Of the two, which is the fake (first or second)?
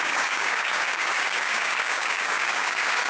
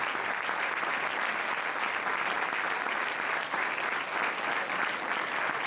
first